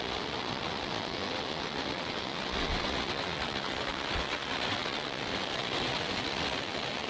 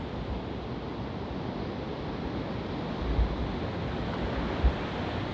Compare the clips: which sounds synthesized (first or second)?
first